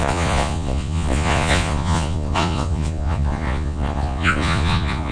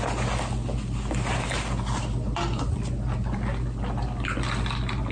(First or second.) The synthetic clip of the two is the first